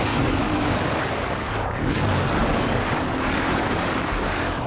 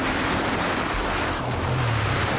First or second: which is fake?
first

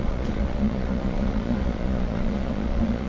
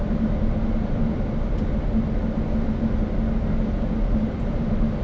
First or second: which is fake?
first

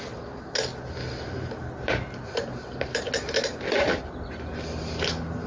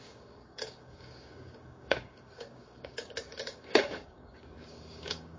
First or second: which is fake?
second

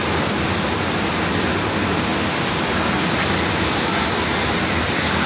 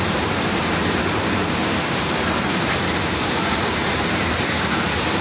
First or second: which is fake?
second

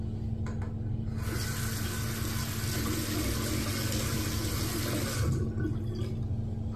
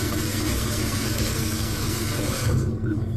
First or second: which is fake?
second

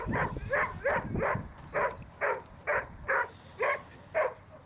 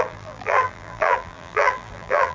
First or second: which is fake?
second